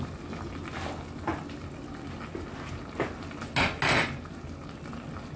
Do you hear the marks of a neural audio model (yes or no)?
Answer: no